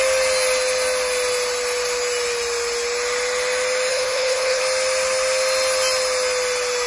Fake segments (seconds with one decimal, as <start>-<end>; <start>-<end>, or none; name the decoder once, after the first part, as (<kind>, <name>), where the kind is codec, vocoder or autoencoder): 3.9-4.6 (codec, HILCodec)